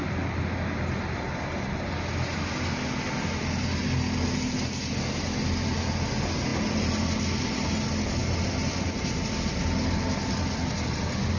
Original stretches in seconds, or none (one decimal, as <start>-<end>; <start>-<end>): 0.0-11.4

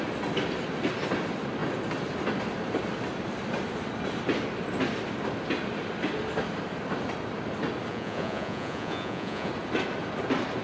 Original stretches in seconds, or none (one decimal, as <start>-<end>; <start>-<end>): 0.0-7.9; 9.5-10.6

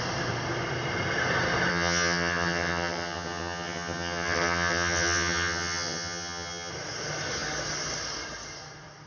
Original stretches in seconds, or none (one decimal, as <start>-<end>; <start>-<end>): 0.0-1.7; 6.7-9.1

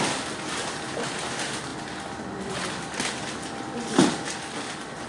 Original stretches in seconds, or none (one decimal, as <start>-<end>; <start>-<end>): 0.0-5.1

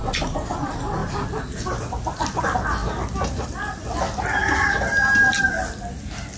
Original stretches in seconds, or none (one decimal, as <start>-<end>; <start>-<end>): 0.0-6.4